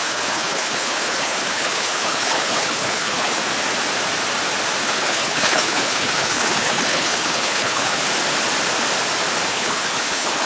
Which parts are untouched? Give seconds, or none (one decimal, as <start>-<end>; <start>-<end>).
3.4-4.8; 8.0-9.5

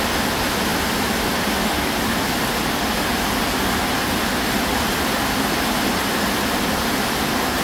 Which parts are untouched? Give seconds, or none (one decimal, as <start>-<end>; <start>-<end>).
0.0-7.6

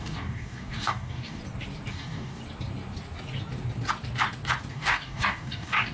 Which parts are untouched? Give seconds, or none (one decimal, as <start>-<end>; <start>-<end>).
1.4-1.9; 2.4-4.7

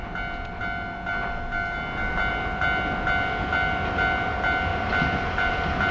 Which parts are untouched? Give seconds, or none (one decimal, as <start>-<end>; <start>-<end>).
0.0-5.9

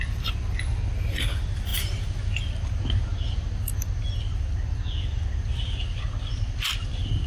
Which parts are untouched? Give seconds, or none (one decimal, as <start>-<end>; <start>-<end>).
0.0-7.3